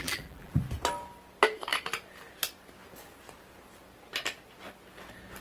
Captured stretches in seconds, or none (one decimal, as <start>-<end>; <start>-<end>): 0.6-5.4